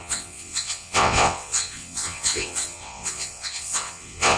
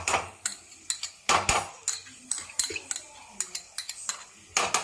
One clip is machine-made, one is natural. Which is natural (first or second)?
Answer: second